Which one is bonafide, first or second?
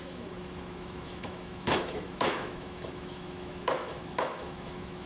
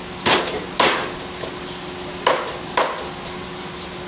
second